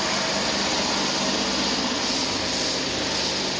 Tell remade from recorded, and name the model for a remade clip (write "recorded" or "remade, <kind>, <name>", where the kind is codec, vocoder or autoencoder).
recorded